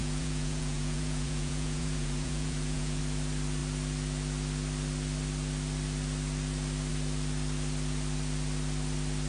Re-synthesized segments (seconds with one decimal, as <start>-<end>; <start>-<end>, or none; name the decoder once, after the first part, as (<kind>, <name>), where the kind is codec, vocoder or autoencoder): 0.0-3.0 (vocoder, Vocos)